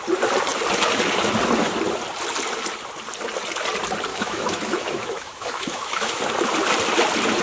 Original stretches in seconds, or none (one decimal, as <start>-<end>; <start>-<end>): 0.0-4.1; 6.2-7.4